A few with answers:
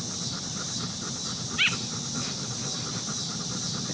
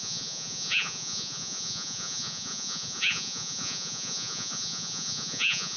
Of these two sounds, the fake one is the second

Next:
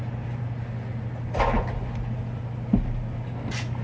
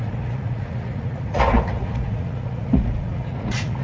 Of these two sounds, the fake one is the second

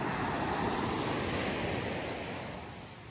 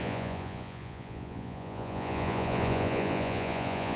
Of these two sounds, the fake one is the second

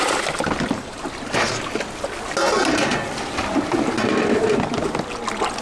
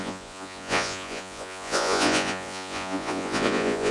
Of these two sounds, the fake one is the second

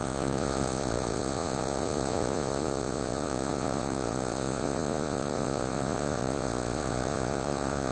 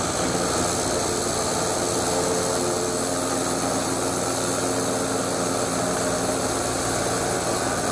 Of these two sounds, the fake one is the first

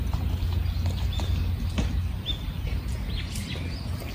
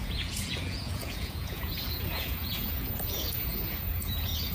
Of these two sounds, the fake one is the second